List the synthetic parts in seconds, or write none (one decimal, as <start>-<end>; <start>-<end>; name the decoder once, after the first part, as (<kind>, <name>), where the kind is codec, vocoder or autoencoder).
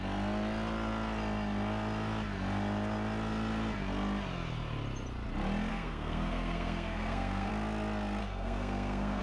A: 5.7-7.5 (codec, SNAC); 8.2-9.2